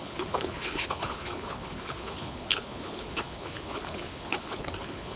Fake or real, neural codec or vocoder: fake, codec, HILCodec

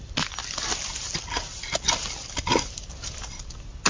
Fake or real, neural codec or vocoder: real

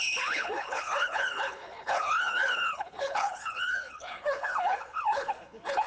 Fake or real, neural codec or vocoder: fake, codec, HILCodec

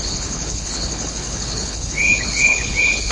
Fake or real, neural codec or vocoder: fake, codec, HILCodec